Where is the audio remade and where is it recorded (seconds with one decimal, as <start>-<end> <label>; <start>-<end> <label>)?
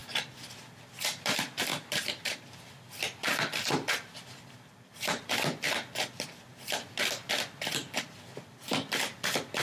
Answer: 0.0-0.5 recorded; 0.5-7.8 remade; 7.8-8.9 recorded; 8.9-9.6 remade